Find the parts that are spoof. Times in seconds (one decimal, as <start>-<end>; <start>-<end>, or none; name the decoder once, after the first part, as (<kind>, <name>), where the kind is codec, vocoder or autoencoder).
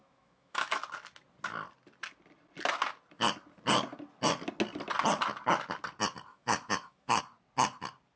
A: 0.0-0.8 (autoencoder, DAC-VAE); 6.3-7.2